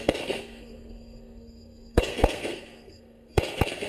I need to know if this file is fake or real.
fake